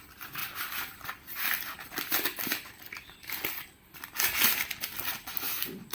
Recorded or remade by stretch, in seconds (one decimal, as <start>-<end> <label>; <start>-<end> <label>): 0.0-5.9 recorded